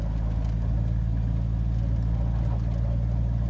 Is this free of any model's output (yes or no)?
yes